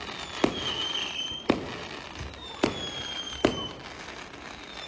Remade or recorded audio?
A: recorded